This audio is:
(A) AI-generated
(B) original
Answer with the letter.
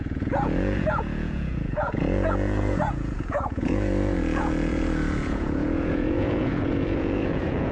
A